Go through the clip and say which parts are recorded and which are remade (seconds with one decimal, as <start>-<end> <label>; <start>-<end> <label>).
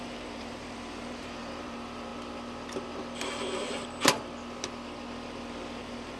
0.0-2.1 remade; 2.1-5.8 recorded; 5.8-6.2 remade